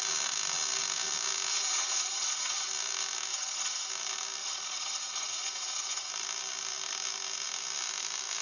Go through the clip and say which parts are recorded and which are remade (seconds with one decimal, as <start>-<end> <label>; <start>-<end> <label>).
0.0-1.5 recorded; 1.5-2.7 remade; 2.7-3.3 recorded; 3.3-3.9 remade; 3.9-4.4 recorded; 4.4-6.1 remade; 6.1-8.4 recorded